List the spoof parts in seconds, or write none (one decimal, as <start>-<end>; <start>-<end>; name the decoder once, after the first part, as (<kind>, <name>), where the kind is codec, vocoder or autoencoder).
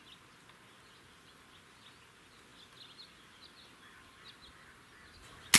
none